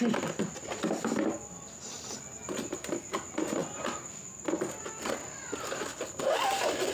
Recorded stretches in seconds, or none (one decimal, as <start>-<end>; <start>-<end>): 0.0-6.9